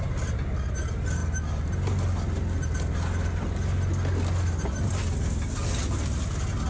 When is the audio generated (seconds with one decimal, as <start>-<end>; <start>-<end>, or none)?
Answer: none